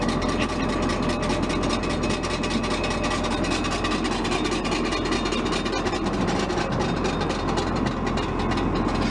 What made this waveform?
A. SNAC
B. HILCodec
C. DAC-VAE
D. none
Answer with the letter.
D